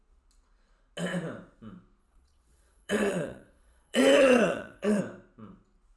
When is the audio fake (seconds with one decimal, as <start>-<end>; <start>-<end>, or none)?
2.0-5.0

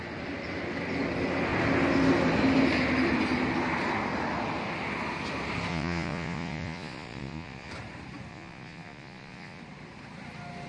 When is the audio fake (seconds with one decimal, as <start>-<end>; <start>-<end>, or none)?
5.7-7.7; 8.3-9.6

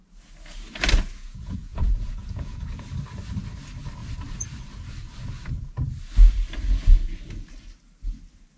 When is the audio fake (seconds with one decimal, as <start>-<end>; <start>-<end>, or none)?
1.2-2.8

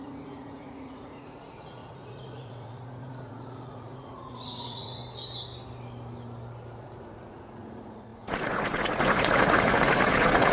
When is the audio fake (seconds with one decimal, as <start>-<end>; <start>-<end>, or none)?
0.0-5.0; 6.8-10.5